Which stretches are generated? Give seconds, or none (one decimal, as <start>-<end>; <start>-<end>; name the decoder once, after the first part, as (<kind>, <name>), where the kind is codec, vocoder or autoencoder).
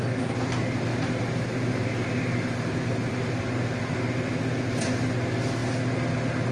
0.9-3.1 (vocoder, BigVGAN v2)